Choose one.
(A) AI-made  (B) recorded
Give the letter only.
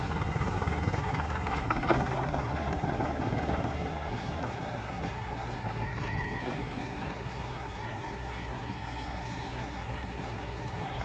A